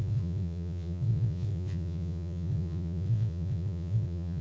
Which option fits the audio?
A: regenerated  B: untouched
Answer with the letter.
A